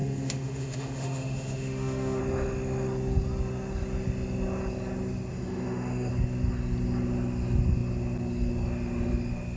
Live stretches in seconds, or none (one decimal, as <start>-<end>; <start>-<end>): 2.2-5.3; 6.1-9.6

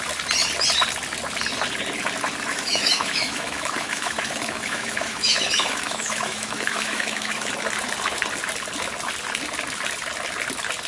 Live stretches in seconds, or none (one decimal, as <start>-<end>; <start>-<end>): 0.0-2.5; 7.5-10.9

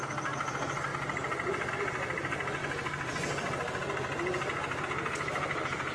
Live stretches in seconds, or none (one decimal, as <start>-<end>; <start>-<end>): 0.0-5.9

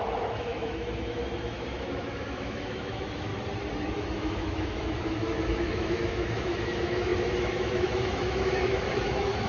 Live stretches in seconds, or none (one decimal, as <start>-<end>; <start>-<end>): 3.3-3.9